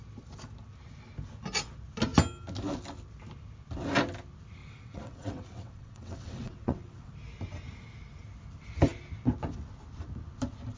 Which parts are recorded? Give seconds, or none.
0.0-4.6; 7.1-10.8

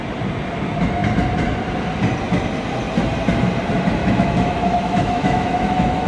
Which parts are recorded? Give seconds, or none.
0.0-4.0

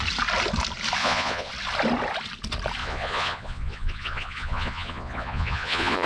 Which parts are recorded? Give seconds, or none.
0.0-1.0; 1.5-2.8

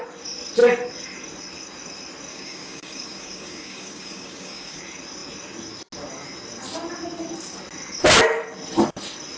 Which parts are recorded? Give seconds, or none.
0.0-2.3; 4.8-9.4